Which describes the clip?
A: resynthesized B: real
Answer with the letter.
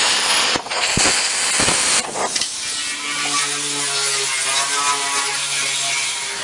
B